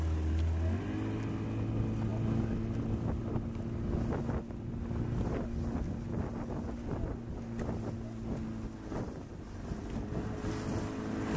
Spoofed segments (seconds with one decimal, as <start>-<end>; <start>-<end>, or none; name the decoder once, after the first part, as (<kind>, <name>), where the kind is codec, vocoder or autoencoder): none